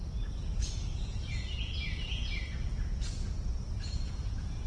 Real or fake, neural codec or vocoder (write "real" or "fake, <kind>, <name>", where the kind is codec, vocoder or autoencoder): fake, vocoder, Vocos